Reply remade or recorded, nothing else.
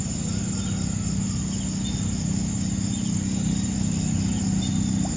recorded